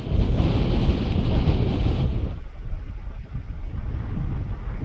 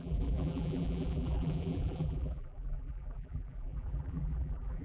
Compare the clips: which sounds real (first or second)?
first